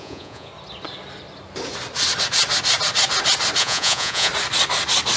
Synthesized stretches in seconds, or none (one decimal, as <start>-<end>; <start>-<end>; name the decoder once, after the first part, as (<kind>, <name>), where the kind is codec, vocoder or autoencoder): 0.0-0.5 (vocoder, Vocos); 3.6-4.3